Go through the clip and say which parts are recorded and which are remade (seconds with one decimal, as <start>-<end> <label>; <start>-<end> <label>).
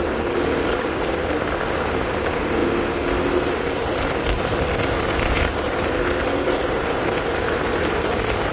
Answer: 0.0-5.5 recorded; 5.5-6.0 remade; 6.0-8.5 recorded